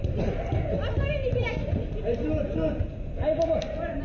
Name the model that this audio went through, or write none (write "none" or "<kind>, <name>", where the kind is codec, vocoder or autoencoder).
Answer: none